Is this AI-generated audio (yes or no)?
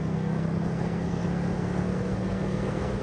yes